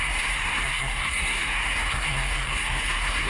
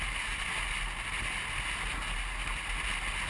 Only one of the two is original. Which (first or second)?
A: second